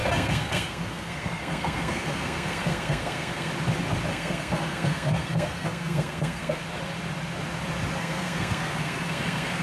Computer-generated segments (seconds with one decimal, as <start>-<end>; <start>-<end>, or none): 0.0-3.5; 4.1-6.6; 8.0-9.6